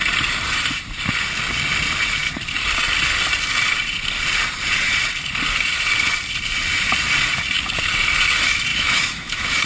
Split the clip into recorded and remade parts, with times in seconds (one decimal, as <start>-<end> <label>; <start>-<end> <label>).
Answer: 0.0-8.7 recorded; 8.7-9.7 remade